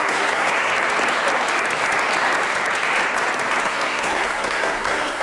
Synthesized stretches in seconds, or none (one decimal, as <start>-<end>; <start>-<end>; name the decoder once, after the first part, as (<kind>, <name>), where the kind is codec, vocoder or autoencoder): 0.0-0.7 (codec, SNAC); 3.6-5.2